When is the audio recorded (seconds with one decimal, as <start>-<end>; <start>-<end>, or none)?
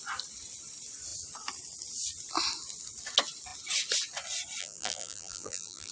0.0-4.6